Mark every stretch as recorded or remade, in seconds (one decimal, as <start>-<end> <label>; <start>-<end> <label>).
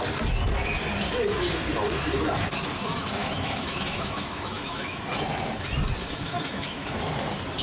0.0-3.2 recorded; 3.2-5.0 remade; 5.0-6.0 recorded; 6.0-7.0 remade; 7.0-7.6 recorded